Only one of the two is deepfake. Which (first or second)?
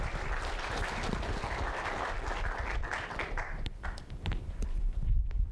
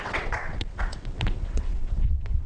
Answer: second